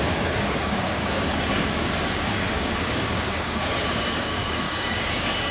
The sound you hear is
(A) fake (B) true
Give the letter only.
A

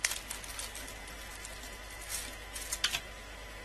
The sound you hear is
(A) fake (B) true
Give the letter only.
B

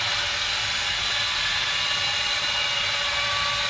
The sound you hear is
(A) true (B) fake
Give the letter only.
A